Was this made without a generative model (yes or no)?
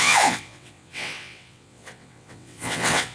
no